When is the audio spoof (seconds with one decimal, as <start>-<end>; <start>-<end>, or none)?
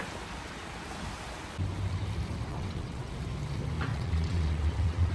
2.5-3.1; 3.9-5.1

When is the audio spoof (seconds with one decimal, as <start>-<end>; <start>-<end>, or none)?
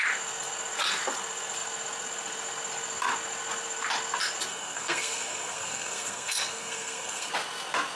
4.5-7.3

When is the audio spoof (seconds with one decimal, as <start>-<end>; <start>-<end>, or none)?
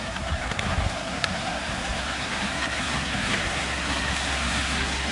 0.0-5.1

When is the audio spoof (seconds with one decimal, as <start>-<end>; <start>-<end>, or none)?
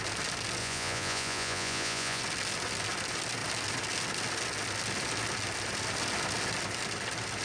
0.6-2.2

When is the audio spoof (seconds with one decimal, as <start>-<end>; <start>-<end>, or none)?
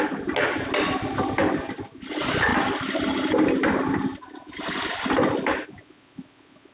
none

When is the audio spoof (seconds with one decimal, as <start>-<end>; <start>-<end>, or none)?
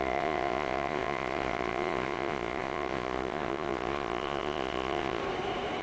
0.0-5.2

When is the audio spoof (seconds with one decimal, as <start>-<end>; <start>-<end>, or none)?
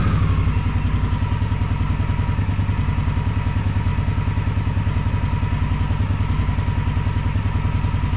none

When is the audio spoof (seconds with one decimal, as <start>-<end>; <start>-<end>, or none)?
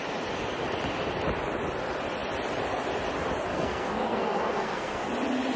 3.5-5.1